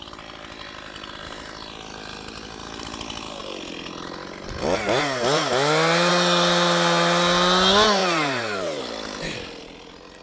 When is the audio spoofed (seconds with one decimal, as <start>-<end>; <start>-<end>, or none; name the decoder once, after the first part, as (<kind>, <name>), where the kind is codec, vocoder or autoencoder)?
8.0-8.8 (vocoder, BigVGAN v2)